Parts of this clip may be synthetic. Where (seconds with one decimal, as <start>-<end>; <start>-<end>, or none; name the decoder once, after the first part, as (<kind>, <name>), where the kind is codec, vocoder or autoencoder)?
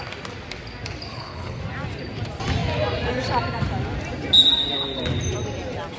1.1-1.6 (codec, HILCodec)